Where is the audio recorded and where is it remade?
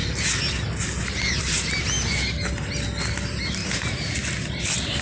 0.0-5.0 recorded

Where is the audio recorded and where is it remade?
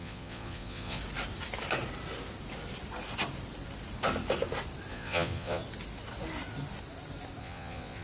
0.0-1.0 remade; 1.0-4.9 recorded; 4.9-5.6 remade; 5.6-7.4 recorded; 7.4-8.0 remade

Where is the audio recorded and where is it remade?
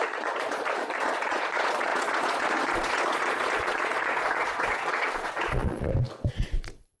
0.0-5.9 remade; 5.9-6.6 recorded; 6.6-7.0 remade